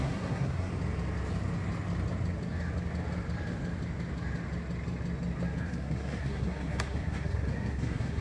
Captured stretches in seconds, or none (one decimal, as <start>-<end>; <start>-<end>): 0.7-5.6